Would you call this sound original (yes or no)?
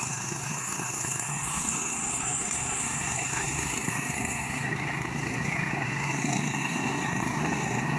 no